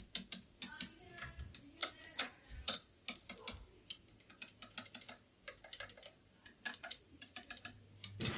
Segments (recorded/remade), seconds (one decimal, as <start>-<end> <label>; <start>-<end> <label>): 0.0-1.8 recorded; 1.8-2.9 remade; 2.9-6.8 recorded; 6.8-7.5 remade; 7.5-8.4 recorded